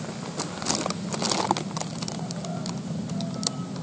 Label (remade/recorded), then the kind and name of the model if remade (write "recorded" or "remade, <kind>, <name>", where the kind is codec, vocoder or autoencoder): recorded